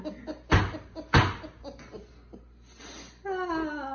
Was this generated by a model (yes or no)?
no